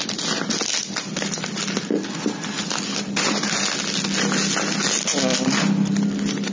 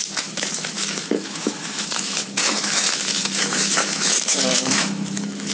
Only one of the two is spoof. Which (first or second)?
second